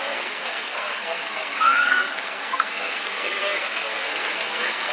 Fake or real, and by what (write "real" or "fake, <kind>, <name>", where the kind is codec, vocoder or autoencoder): fake, codec, SNAC